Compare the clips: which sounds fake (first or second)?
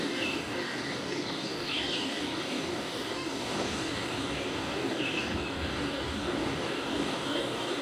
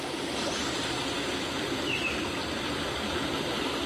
first